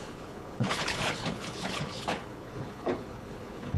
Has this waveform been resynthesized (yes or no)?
yes